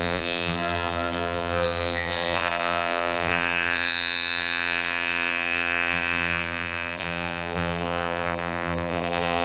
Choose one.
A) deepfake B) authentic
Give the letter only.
A